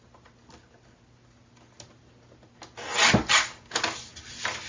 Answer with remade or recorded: recorded